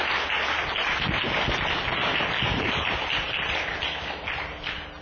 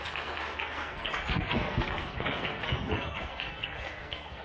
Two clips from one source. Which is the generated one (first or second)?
second